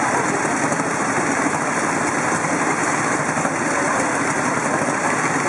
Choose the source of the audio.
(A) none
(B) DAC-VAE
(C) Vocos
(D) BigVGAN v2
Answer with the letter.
A